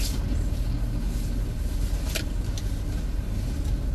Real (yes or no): yes